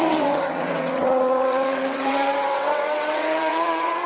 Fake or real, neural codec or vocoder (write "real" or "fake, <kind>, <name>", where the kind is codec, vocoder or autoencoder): fake, vocoder, WaveNeXt